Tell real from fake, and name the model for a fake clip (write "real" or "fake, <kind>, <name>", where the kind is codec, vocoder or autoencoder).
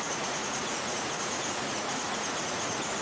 fake, vocoder, Vocos